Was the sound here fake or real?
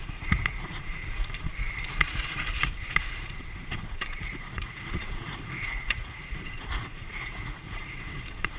fake